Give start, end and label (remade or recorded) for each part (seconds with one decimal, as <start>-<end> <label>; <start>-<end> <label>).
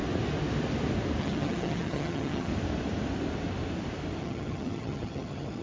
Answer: 0.0-1.2 recorded; 1.2-2.5 remade; 2.5-4.2 recorded; 4.2-5.6 remade